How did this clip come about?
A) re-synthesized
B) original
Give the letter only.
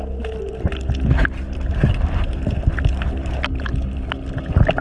B